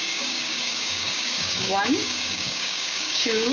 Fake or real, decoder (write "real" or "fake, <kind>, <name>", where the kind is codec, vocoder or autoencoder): fake, codec, DAC